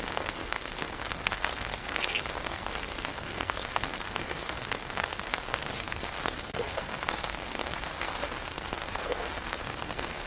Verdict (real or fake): fake